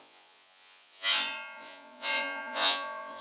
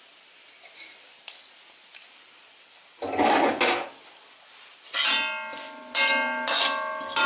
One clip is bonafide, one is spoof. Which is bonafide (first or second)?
second